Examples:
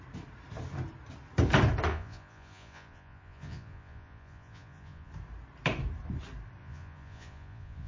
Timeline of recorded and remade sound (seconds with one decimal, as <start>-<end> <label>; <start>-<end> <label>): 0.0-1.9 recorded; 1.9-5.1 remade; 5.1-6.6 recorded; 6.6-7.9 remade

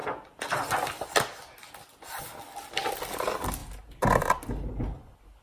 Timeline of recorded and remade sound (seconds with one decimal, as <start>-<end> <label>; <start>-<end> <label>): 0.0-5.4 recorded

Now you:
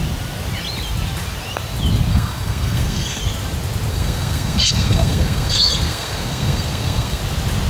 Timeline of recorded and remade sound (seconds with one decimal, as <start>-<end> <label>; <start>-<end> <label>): 0.0-2.1 recorded; 2.1-3.2 remade; 3.2-3.9 recorded; 3.9-7.2 remade; 7.2-7.7 recorded